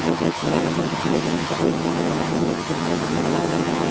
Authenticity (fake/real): fake